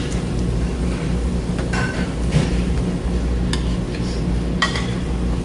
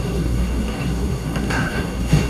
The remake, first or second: second